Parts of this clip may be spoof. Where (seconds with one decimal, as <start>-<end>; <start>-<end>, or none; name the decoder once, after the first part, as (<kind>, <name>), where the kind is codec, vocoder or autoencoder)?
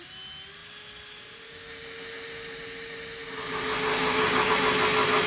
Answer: 3.9-4.5 (codec, DAC)